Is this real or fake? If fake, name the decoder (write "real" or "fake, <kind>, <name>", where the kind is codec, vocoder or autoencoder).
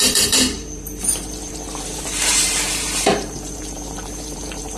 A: fake, vocoder, BigVGAN v2